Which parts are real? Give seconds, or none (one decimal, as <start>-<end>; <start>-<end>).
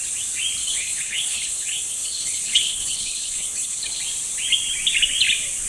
0.0-0.6; 4.0-5.7